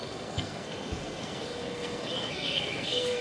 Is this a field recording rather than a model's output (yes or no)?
no